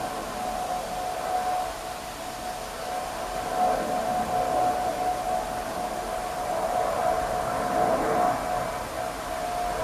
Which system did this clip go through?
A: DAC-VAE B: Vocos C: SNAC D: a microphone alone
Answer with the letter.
D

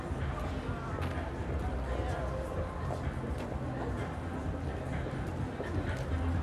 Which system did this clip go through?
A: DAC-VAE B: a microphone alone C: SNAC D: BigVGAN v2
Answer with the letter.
B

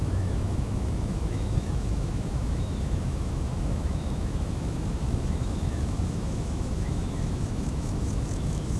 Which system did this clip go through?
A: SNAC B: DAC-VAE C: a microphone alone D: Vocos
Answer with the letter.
B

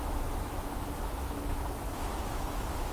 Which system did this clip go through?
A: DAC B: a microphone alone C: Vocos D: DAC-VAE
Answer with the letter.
D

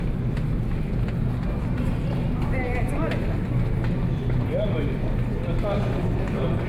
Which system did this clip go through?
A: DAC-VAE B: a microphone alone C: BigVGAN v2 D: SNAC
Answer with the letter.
B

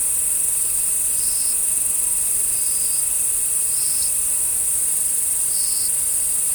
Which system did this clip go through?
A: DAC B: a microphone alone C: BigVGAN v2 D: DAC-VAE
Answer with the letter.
B